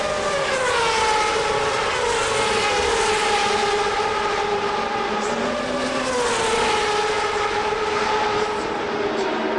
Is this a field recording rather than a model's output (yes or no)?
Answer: yes